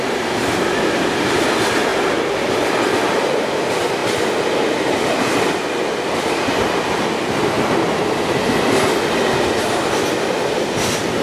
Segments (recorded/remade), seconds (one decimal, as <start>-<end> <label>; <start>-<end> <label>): 0.0-11.2 recorded